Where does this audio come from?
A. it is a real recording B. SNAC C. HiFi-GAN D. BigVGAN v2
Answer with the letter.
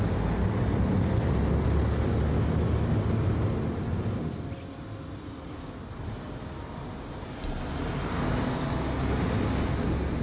A